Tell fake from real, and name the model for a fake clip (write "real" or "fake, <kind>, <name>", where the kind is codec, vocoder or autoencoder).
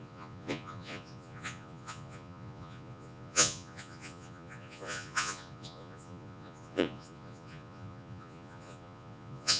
fake, vocoder, Vocos